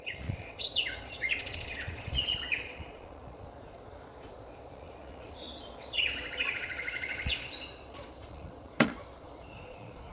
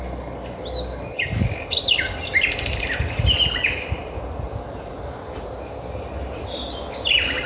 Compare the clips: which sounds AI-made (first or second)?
first